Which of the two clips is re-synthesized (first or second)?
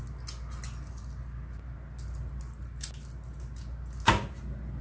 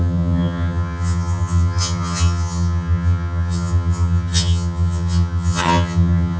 second